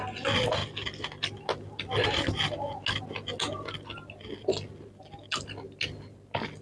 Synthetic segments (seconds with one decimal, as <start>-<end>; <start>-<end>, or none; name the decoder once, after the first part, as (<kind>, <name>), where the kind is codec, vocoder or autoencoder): none